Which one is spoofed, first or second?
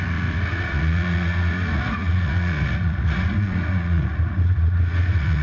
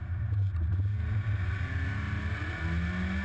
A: first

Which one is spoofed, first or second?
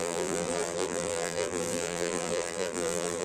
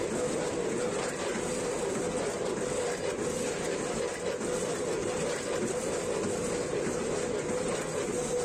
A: first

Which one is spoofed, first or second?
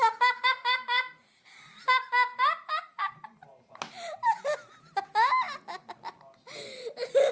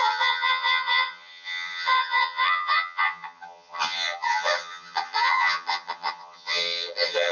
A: second